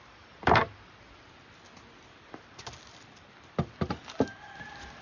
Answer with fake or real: real